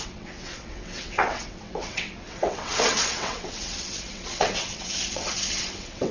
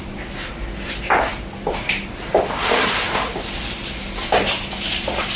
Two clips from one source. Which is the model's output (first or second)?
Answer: first